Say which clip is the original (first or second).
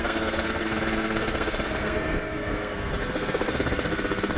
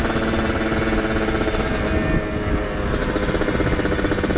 second